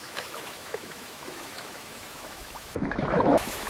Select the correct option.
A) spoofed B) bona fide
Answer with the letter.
A